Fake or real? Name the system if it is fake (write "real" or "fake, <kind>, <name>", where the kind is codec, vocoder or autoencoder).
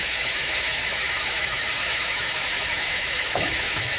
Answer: fake, autoencoder, DAC-VAE